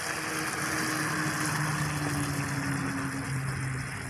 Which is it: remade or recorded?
recorded